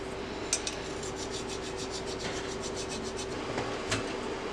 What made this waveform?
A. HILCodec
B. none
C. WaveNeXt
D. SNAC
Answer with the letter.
B